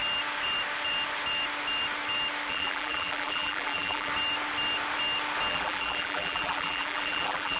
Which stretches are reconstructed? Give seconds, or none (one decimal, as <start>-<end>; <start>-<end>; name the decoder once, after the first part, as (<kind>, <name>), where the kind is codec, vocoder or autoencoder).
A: 2.5-4.1 (vocoder, BigVGAN v2); 5.5-7.6